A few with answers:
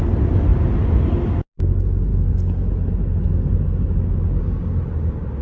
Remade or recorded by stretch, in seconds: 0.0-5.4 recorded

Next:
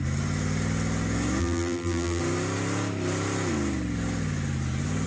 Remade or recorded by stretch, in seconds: 0.0-1.4 recorded; 1.4-2.2 remade; 2.2-5.1 recorded

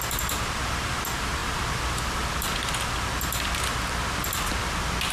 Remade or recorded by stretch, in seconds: 0.0-5.1 recorded

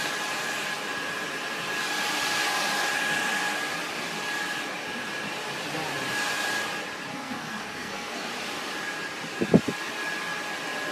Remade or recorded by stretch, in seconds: 0.0-7.1 recorded; 7.1-8.3 remade; 8.3-10.9 recorded